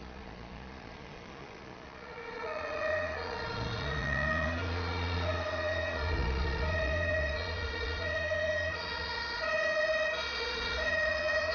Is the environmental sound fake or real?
fake